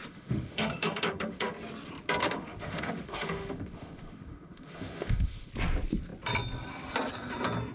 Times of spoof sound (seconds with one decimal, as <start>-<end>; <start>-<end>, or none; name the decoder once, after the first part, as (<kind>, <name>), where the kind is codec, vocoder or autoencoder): 0.0-1.5 (autoencoder, DAC-VAE); 2.2-5.5